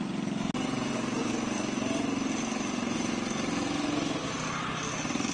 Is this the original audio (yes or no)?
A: yes